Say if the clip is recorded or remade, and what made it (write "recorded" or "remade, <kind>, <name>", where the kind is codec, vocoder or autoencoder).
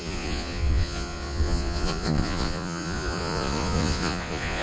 remade, vocoder, Vocos